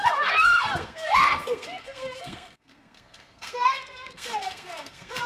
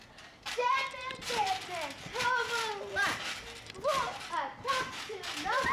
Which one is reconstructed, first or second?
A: first